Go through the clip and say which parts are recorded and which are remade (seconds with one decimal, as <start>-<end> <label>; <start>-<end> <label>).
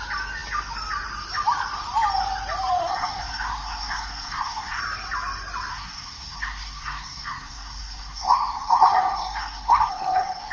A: 0.0-2.8 recorded; 2.8-4.8 remade; 4.8-5.7 recorded; 5.7-10.5 remade